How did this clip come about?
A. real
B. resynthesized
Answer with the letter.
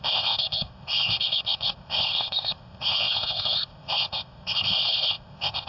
B